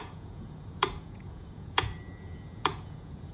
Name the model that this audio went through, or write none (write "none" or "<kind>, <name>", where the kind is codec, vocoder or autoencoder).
vocoder, Vocos